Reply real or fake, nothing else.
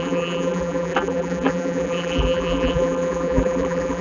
fake